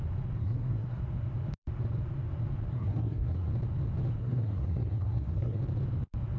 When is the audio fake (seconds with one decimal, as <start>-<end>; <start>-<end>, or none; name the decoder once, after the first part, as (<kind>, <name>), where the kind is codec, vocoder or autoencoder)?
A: 0.4-1.0 (codec, SNAC); 2.7-3.5; 4.2-5.6